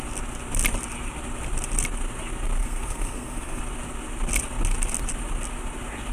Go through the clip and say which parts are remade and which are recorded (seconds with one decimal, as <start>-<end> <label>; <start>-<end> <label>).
0.0-2.6 recorded; 2.6-3.6 remade; 3.6-6.1 recorded